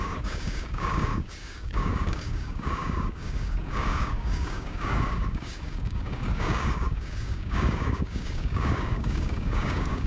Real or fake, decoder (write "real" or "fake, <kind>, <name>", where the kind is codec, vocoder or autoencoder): fake, codec, DAC